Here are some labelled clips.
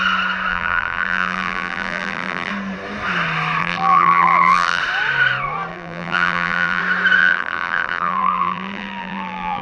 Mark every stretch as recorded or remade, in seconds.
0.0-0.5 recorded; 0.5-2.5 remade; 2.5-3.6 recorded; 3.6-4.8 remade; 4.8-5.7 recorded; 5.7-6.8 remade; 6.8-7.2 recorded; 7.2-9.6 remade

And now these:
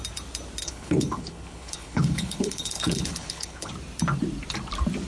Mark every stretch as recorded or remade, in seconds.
0.0-0.6 recorded; 0.6-3.7 remade; 3.7-5.1 recorded

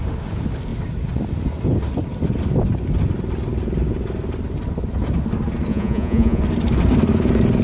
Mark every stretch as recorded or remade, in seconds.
0.0-5.7 recorded; 5.7-6.4 remade; 6.4-7.6 recorded